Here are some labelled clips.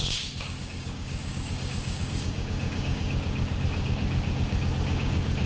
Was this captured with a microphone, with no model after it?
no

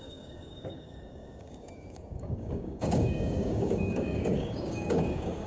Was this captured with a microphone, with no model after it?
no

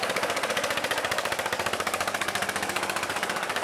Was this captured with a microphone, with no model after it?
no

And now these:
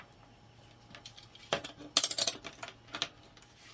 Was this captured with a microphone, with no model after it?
yes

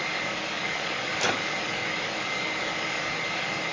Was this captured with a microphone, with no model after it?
no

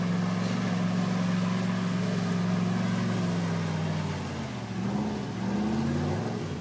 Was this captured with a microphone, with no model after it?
yes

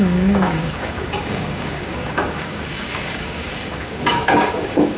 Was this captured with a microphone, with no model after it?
no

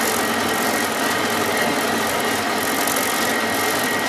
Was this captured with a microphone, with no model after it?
yes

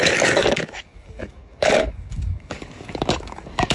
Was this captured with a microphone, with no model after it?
no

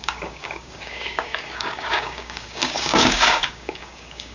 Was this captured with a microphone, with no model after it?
no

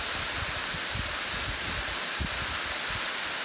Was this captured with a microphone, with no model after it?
yes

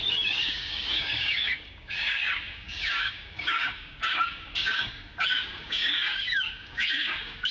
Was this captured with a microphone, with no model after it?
no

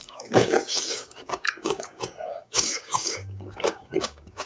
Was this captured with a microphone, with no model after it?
no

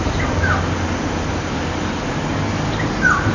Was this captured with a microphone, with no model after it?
yes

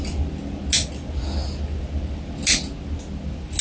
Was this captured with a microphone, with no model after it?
yes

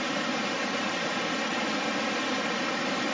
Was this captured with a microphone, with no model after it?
yes